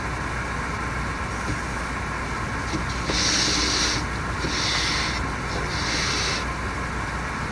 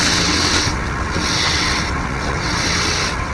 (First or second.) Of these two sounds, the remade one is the second